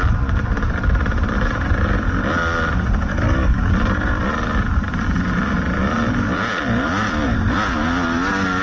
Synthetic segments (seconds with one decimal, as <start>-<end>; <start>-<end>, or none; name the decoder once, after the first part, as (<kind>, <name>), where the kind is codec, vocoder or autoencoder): 3.1-3.7 (codec, DAC)